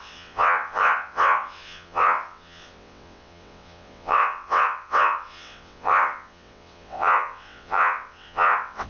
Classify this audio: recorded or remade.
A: remade